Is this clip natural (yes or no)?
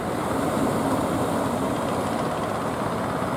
yes